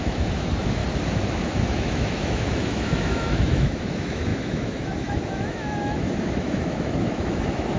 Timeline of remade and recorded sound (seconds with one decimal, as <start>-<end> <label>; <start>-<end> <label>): 0.0-0.8 remade; 0.8-1.3 recorded; 1.3-7.8 remade